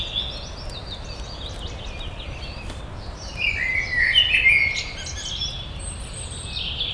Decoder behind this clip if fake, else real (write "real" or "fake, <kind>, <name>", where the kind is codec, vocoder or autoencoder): real